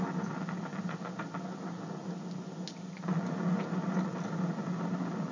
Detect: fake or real real